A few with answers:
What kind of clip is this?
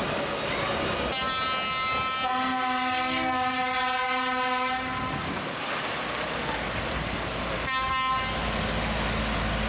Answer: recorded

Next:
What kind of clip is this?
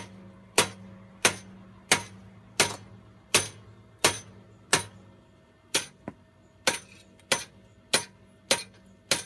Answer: recorded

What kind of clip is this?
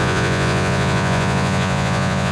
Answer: remade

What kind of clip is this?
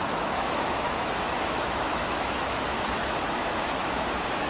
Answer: remade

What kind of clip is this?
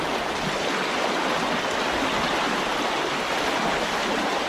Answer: recorded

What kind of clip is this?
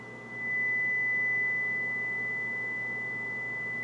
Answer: recorded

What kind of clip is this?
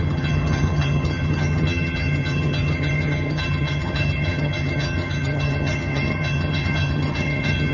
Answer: remade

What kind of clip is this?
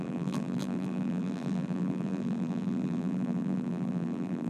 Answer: remade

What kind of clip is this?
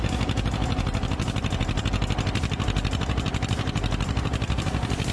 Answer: recorded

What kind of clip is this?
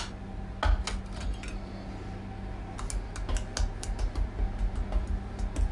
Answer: recorded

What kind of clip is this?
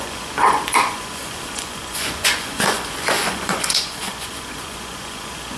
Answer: remade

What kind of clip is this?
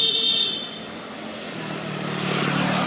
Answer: recorded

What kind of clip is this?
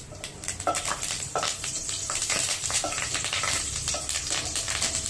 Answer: remade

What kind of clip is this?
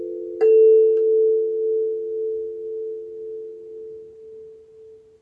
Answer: recorded